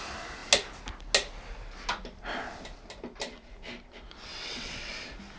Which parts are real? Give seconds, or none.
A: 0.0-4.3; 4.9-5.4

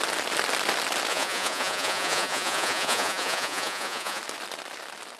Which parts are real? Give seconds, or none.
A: 0.0-1.1; 4.2-5.2

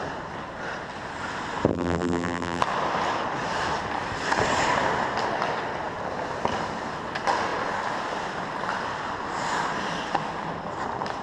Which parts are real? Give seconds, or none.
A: 0.0-1.7; 2.6-11.2

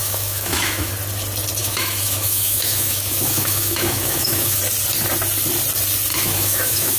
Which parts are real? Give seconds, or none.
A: 0.9-1.6; 4.6-6.1

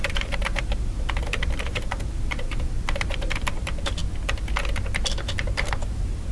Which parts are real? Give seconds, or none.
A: 4.0-5.8

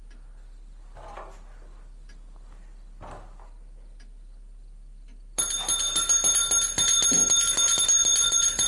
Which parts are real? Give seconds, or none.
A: 0.0-8.0